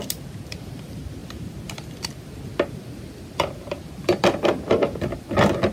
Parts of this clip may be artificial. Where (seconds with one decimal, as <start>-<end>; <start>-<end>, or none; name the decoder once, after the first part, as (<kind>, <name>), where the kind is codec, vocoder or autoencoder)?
none